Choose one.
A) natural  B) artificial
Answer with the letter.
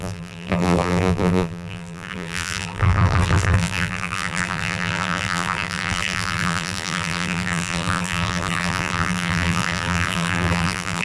B